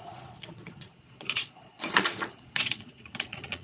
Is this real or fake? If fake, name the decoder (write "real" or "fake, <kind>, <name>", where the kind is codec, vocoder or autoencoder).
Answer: fake, vocoder, Vocos